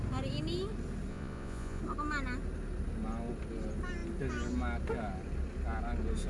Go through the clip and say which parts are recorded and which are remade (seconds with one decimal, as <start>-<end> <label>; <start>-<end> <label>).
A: 0.0-1.1 recorded; 1.1-1.8 remade; 1.8-6.3 recorded